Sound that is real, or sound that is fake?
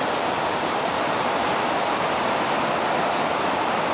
real